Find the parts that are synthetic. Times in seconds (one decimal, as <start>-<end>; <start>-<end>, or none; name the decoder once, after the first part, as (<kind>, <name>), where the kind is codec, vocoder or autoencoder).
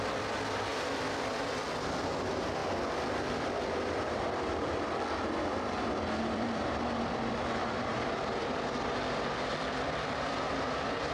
0.0-0.7 (vocoder, BigVGAN v2); 1.6-11.1